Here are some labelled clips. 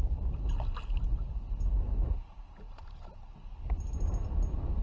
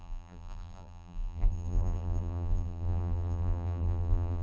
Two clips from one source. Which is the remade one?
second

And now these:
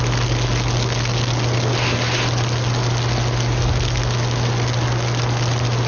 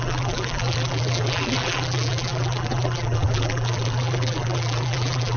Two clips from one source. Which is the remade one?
second